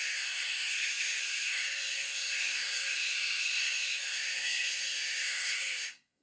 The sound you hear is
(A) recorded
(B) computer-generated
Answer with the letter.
B